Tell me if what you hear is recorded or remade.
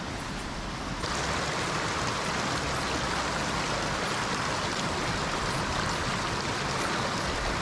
recorded